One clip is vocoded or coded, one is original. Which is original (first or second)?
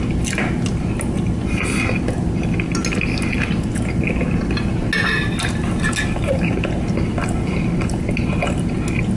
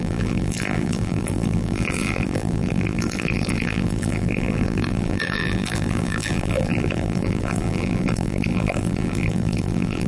first